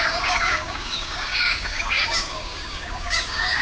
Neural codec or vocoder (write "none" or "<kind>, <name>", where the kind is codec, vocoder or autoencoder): codec, DAC